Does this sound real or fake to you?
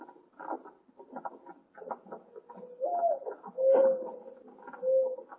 real